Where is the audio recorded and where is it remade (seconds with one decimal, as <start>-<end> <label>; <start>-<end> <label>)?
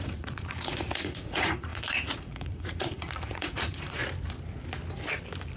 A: 0.0-4.0 remade; 4.0-5.6 recorded